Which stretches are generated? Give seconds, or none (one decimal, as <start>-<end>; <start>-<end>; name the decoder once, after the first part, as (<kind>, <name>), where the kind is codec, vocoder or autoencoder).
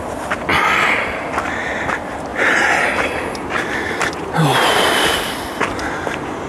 none